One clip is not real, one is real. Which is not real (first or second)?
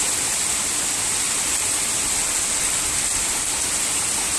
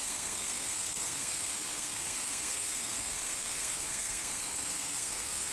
second